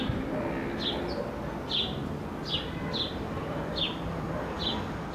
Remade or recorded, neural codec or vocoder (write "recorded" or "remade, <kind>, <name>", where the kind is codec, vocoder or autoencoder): recorded